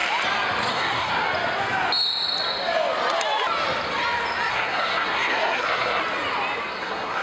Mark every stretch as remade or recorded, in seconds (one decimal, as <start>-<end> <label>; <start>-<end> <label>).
0.0-0.7 recorded; 0.7-1.1 remade; 1.1-4.5 recorded; 4.5-6.0 remade; 6.0-6.8 recorded; 6.8-7.2 remade

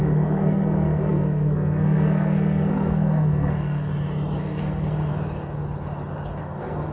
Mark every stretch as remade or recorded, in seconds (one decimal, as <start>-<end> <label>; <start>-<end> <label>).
0.0-3.9 remade; 3.9-4.4 recorded; 4.4-5.1 remade; 5.1-6.4 recorded; 6.4-6.9 remade

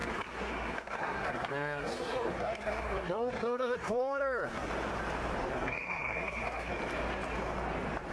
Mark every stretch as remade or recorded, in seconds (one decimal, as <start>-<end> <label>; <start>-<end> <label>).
0.0-4.7 remade; 4.7-5.5 recorded; 5.5-6.7 remade; 6.7-8.1 recorded

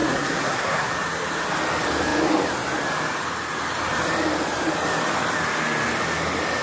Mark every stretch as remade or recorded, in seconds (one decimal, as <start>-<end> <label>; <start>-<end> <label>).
0.0-0.9 remade; 0.9-6.6 recorded

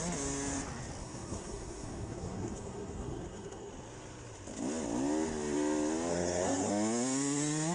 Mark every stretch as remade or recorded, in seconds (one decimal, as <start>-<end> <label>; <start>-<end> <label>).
0.0-1.0 recorded; 1.0-3.7 remade; 3.7-6.1 recorded; 6.1-6.7 remade; 6.7-7.7 recorded

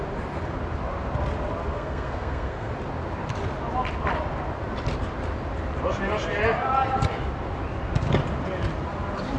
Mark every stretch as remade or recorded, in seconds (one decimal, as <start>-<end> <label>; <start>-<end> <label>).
0.0-1.7 recorded; 1.7-2.7 remade; 2.7-9.4 recorded

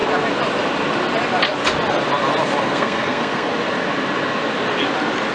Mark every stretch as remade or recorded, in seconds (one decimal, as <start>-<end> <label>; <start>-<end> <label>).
0.0-2.6 recorded; 2.6-3.5 remade; 3.5-5.3 recorded

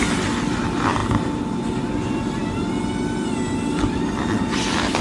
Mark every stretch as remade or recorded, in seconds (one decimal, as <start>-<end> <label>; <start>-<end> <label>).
0.0-5.0 recorded